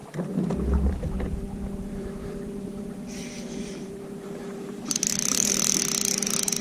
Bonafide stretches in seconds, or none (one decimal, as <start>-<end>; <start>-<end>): 0.0-1.8; 5.8-6.6